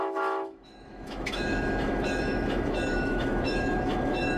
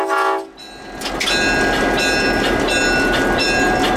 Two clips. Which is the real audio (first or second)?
second